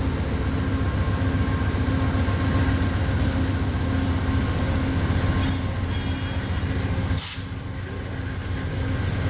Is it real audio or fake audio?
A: real